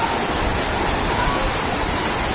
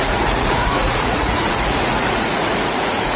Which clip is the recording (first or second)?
first